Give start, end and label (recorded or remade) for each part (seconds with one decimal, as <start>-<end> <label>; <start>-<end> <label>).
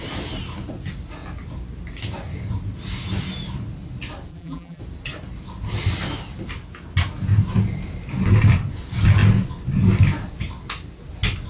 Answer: 0.0-4.3 recorded; 4.3-4.8 remade; 4.8-11.5 recorded